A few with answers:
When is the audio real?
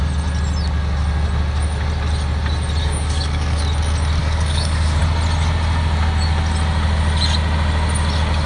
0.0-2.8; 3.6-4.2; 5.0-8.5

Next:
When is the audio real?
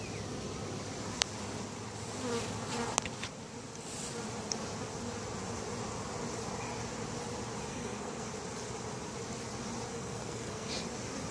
0.0-7.7; 8.3-9.9; 10.7-11.3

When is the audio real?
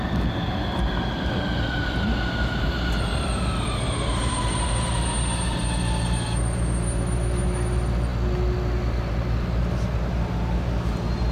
0.0-11.3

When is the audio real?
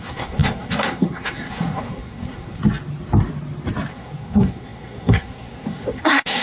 2.6-3.9